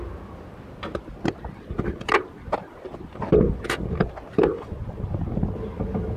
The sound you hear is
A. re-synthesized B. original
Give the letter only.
A